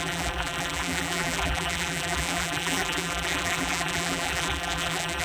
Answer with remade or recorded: remade